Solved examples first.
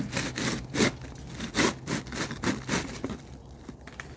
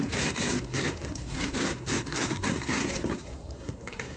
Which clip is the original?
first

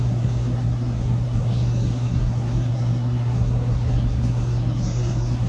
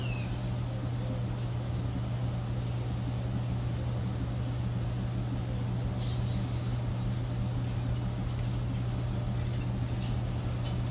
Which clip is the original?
second